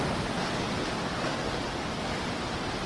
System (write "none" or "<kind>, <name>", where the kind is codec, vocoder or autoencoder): none